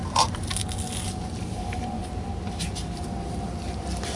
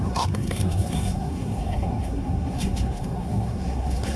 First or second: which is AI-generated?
second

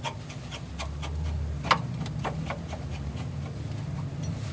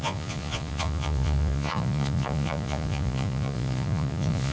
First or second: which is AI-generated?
second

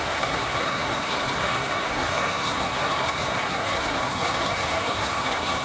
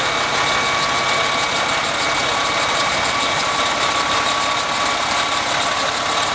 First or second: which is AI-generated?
first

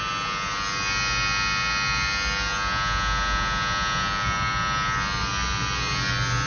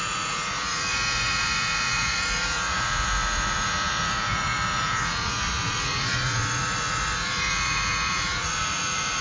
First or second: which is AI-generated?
second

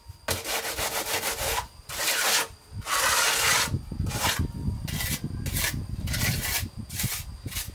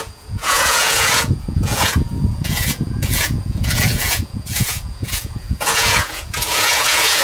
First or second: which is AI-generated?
second